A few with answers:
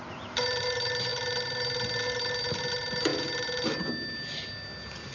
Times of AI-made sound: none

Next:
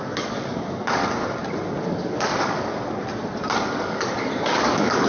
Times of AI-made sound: 0.0-1.0 (codec, DAC); 1.8-2.7; 3.7-5.1

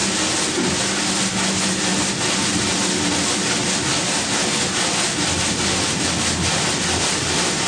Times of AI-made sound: none